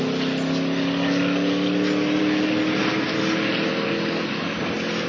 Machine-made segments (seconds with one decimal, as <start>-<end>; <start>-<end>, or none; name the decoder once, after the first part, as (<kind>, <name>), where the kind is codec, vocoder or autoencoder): none